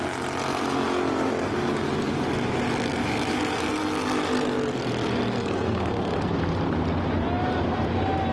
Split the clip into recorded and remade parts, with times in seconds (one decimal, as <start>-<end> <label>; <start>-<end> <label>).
0.0-5.3 recorded; 5.3-6.4 remade; 6.4-8.3 recorded